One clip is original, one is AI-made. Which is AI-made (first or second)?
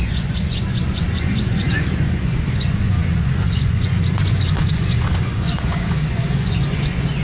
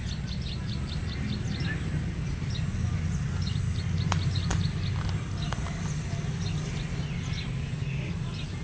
first